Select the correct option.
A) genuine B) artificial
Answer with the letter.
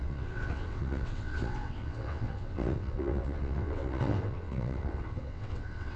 B